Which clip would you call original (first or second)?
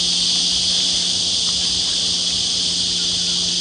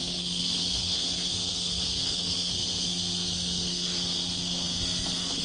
first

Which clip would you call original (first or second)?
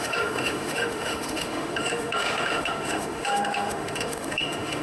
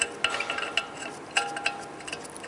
second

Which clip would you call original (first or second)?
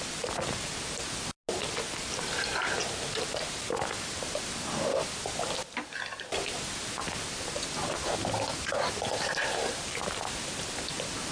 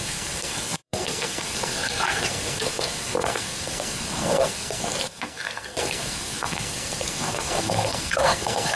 first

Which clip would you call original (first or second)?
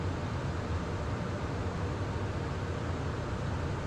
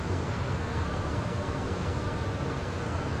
first